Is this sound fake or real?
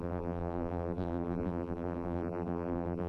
fake